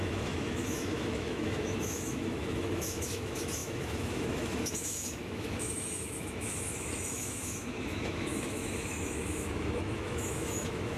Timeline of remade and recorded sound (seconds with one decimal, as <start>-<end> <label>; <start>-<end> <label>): 0.0-11.0 remade